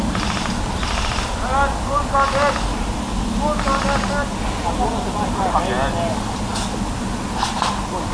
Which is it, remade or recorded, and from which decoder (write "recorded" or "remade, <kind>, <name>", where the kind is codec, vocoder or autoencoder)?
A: recorded